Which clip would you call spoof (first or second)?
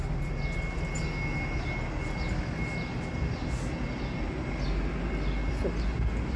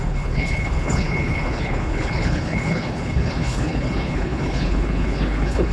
second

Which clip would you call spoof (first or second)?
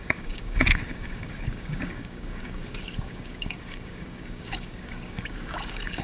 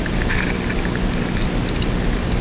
first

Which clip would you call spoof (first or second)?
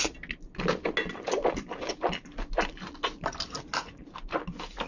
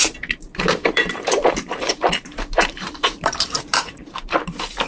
second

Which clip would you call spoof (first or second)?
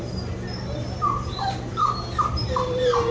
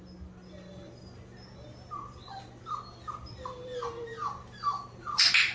first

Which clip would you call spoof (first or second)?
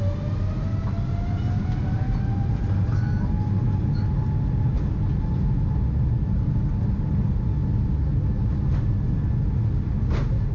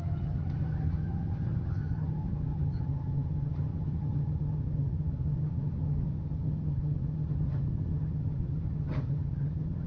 second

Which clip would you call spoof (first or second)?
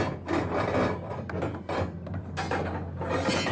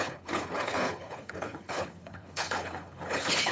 second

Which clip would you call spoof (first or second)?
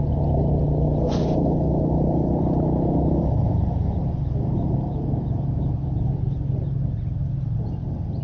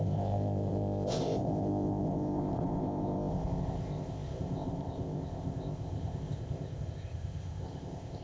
second